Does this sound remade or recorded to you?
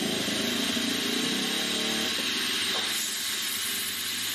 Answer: recorded